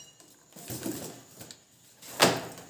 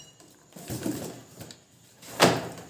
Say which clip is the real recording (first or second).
first